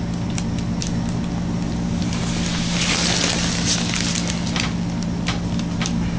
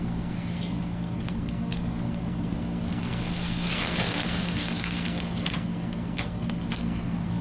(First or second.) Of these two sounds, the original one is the first